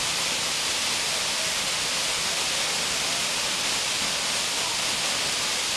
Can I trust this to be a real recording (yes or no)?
yes